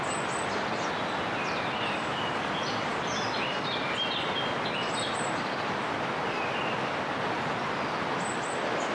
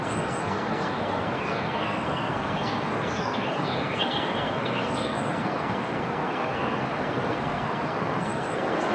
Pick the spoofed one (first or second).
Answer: second